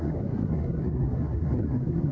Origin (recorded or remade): remade